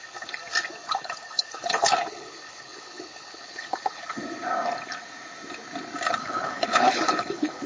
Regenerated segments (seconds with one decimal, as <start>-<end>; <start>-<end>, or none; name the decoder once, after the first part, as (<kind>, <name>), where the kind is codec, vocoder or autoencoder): 0.0-0.4 (codec, HILCodec); 0.9-4.2; 6.1-7.7